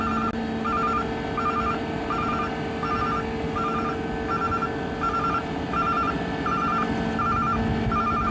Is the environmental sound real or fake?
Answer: real